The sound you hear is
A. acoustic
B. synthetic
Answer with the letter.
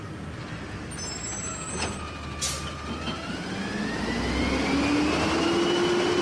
A